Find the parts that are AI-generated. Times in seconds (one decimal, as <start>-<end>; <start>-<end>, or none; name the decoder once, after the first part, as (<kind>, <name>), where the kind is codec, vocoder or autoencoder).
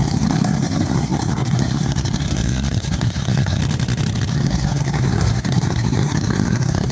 0.0-3.6 (codec, SNAC); 4.3-6.9